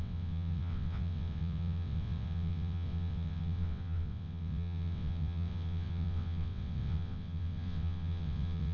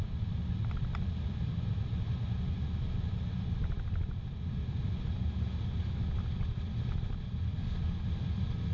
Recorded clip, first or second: second